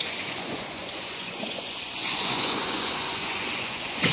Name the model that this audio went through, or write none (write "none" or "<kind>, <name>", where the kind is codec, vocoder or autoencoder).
vocoder, Vocos